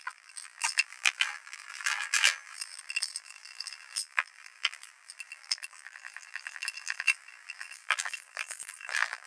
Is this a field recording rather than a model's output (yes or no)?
no